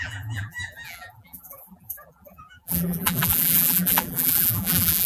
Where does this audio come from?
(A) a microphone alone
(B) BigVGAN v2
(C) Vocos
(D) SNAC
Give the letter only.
B